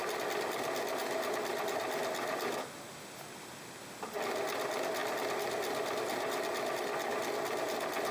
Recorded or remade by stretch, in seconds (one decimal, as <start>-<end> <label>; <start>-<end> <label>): 0.0-8.1 recorded